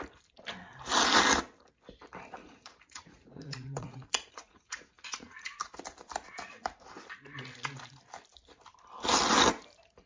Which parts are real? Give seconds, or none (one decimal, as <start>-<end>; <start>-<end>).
0.0-2.4; 5.6-10.1